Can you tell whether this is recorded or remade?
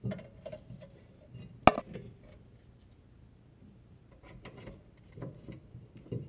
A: recorded